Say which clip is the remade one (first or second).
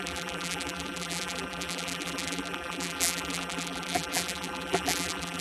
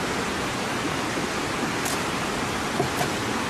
first